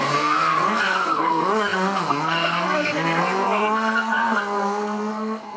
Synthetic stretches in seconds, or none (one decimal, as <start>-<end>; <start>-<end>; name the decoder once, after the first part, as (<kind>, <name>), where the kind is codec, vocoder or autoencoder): 0.0-5.6 (codec, SNAC)